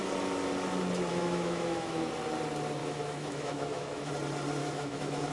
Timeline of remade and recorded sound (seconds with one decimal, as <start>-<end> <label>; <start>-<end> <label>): 0.0-1.1 recorded; 1.1-2.1 remade; 2.1-2.8 recorded; 2.8-4.1 remade; 4.1-4.6 recorded; 4.6-5.3 remade